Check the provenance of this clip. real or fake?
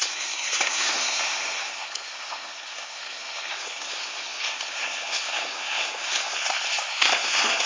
fake